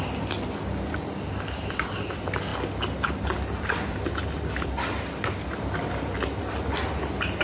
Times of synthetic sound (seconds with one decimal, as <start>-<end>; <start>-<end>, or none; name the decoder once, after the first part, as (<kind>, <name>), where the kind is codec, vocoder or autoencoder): none